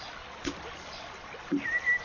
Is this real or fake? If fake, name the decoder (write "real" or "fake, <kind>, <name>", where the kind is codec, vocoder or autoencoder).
real